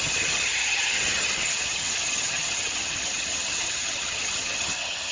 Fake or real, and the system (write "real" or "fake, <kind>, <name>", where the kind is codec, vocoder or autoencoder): fake, vocoder, HiFi-GAN